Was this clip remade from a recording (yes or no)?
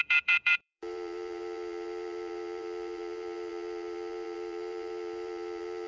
yes